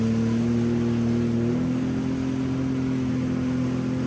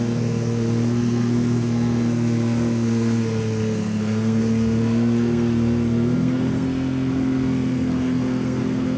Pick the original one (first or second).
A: first